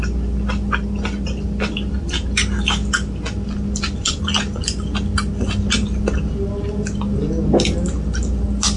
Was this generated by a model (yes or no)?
no